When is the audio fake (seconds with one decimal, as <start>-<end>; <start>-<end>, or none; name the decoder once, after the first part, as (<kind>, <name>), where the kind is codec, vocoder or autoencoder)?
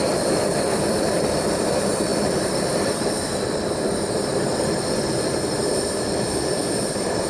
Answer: 0.0-7.3 (vocoder, BigVGAN v2)